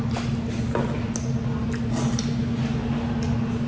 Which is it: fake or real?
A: real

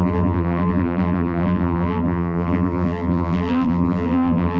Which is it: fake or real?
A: fake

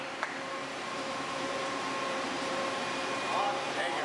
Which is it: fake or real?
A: fake